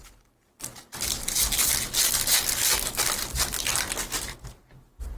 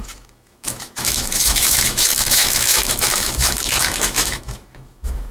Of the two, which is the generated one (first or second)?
second